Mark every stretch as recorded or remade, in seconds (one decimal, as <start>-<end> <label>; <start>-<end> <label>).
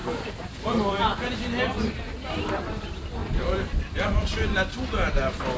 0.0-1.0 remade; 1.0-3.2 recorded; 3.2-4.5 remade; 4.5-5.6 recorded